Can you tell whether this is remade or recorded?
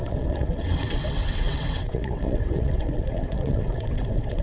remade